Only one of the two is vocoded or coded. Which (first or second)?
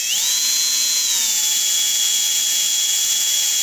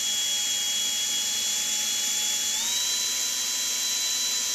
first